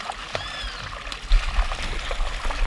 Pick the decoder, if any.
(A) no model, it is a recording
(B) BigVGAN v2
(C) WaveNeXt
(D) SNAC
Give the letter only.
A